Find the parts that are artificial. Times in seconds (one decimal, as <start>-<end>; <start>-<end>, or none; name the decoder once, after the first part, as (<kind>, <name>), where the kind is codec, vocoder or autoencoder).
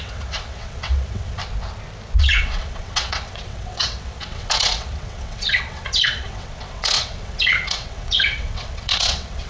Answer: 0.0-1.4 (vocoder, WaveNeXt); 2.2-9.5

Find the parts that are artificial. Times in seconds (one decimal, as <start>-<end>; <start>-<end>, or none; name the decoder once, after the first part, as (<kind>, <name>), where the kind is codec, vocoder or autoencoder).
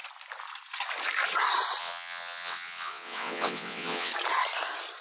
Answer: 1.8-4.1 (vocoder, WaveNeXt)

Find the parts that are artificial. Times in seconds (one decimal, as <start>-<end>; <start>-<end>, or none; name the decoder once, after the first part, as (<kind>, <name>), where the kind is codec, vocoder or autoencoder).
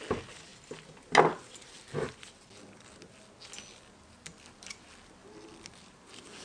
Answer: none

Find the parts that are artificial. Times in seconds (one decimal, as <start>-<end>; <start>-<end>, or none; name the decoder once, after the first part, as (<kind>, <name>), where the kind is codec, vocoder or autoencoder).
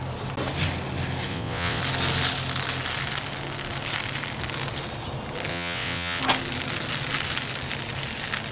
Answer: 1.3-1.8 (vocoder, WaveNeXt); 5.5-6.2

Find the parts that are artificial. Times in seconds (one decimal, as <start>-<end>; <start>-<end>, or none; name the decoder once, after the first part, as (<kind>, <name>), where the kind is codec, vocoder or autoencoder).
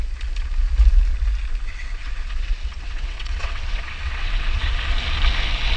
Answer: 1.7-4.7 (vocoder, WaveNeXt)